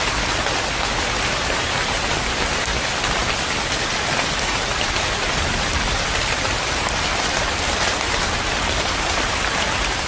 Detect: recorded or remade recorded